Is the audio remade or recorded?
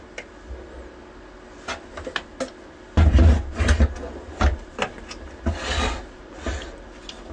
recorded